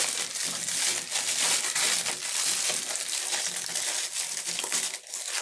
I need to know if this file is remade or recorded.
recorded